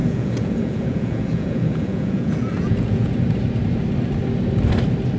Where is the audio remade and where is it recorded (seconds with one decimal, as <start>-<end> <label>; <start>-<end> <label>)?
0.0-3.1 remade; 3.1-5.2 recorded